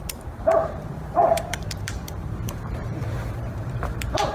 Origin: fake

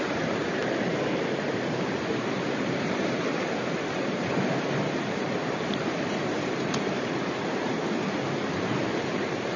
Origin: fake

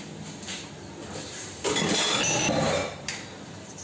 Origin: real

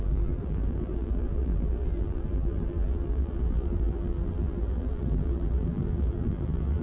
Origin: fake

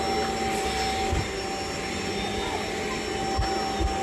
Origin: real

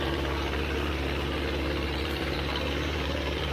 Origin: fake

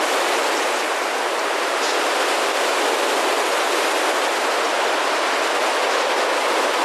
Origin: real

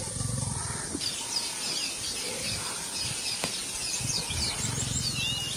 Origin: real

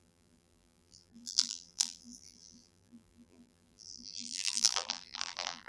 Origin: fake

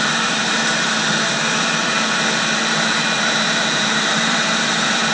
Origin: fake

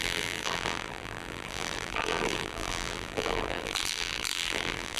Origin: fake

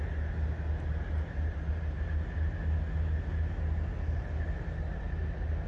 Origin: real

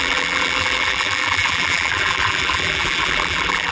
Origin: fake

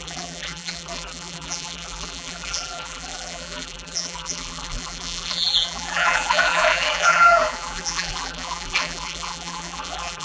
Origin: fake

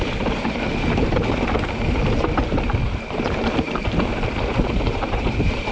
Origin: fake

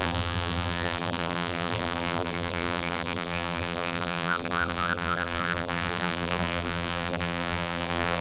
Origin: fake